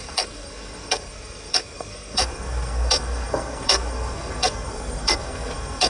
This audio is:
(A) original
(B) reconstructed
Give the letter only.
B